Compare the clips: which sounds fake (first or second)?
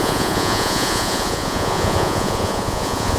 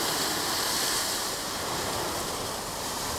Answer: first